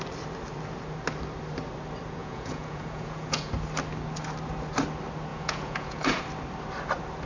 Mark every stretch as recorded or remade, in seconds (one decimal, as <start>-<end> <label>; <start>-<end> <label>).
0.0-2.2 recorded; 2.2-3.5 remade; 3.5-5.3 recorded; 5.3-6.2 remade; 6.2-7.3 recorded